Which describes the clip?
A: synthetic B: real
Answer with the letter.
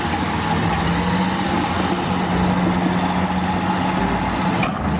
B